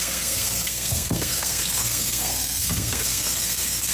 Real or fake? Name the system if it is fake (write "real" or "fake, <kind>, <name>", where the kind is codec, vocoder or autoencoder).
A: fake, codec, SNAC